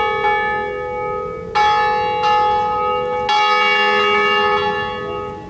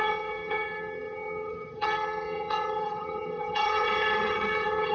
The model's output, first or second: second